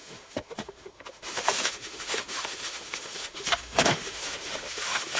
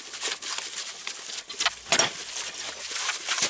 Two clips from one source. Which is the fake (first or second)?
first